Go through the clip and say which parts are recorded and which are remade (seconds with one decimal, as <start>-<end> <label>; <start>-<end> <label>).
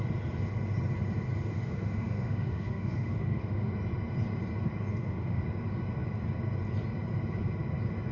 0.0-1.5 recorded; 1.5-3.7 remade; 3.7-4.9 recorded; 4.9-5.4 remade; 5.4-8.1 recorded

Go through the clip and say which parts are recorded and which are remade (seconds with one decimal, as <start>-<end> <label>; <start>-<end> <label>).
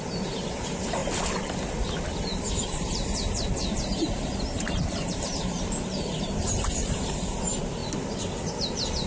0.0-1.0 remade; 1.0-2.5 recorded; 2.5-7.8 remade; 7.8-8.3 recorded; 8.3-9.1 remade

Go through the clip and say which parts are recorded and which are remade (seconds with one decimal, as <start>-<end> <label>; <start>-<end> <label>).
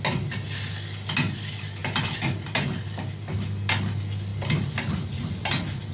0.0-5.9 recorded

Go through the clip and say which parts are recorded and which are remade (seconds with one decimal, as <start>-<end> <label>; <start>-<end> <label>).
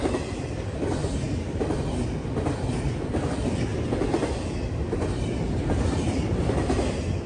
0.0-1.0 recorded; 1.0-1.8 remade; 1.8-7.3 recorded